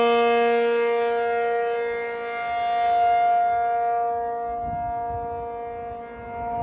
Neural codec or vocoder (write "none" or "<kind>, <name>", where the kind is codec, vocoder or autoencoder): none